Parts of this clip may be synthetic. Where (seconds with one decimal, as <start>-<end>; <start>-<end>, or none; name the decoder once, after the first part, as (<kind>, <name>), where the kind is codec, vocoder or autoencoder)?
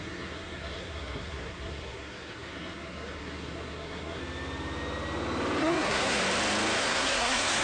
0.0-4.2 (codec, SNAC); 5.6-6.2; 6.8-7.6